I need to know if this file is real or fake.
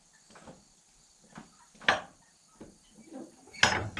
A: real